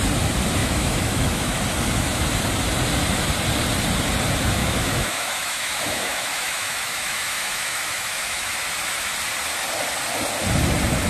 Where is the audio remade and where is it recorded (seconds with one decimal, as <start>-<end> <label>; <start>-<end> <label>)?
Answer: 0.0-0.6 recorded; 0.6-1.6 remade; 1.6-4.6 recorded; 4.6-8.5 remade; 8.5-11.1 recorded